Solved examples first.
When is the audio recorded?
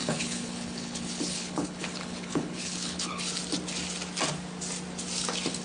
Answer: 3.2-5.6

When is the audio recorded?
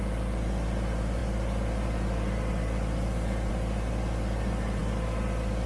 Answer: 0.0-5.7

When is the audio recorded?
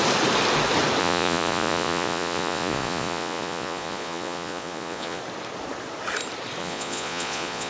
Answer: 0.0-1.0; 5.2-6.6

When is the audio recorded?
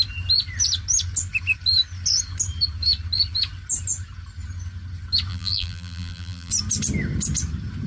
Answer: 0.0-5.3; 6.5-7.9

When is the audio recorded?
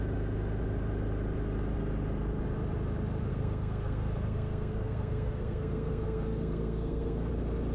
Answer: 0.0-3.3; 7.3-7.7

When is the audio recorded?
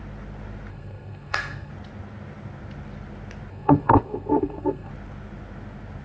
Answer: 0.0-0.7; 1.7-3.5; 4.9-6.0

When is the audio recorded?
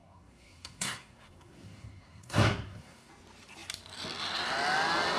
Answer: 3.1-5.2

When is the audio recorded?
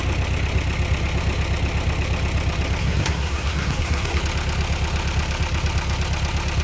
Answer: 0.0-2.8; 4.2-6.6